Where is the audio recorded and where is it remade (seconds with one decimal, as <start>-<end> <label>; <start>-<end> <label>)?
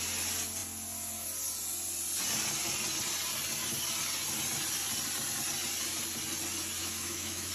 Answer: 0.0-6.8 recorded; 6.8-7.5 remade